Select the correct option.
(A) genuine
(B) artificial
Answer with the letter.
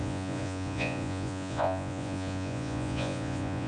B